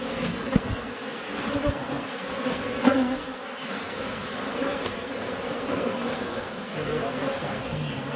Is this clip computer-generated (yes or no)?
yes